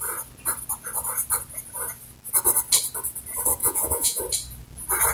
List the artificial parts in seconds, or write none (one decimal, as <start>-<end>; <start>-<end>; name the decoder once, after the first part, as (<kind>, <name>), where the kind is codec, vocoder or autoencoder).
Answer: 3.6-4.2 (vocoder, Vocos)